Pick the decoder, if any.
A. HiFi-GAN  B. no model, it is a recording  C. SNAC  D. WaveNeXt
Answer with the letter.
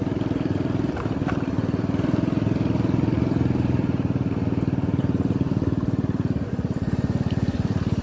B